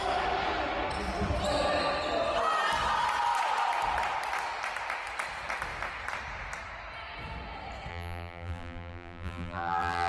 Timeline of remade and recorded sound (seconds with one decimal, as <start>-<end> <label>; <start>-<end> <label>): 0.0-7.9 recorded; 7.9-10.1 remade